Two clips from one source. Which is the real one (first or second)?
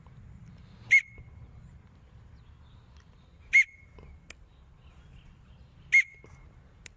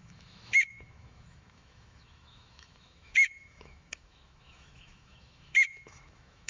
first